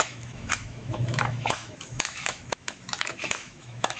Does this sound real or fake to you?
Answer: fake